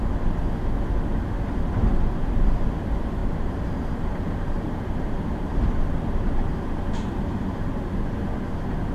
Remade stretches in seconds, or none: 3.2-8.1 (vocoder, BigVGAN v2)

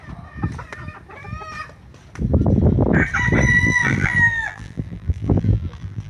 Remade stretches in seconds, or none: 3.5-6.1 (vocoder, BigVGAN v2)

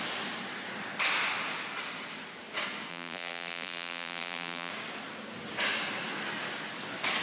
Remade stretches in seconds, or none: 2.9-4.7 (vocoder, BigVGAN v2)

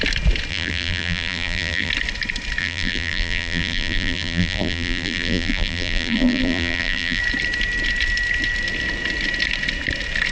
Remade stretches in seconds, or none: 0.5-1.9 (vocoder, BigVGAN v2); 2.6-7.2

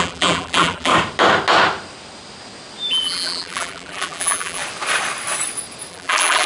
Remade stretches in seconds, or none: 0.0-0.9 (vocoder, BigVGAN v2); 2.9-4.6; 5.9-6.5

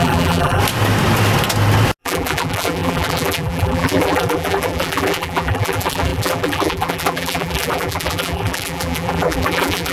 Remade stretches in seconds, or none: 0.0-0.6 (vocoder, BigVGAN v2); 2.0-9.9

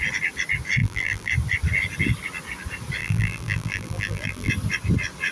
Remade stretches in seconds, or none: 0.8-1.3 (vocoder, BigVGAN v2); 3.0-4.5